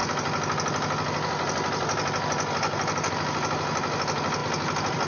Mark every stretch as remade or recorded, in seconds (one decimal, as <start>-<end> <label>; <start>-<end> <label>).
0.0-5.1 recorded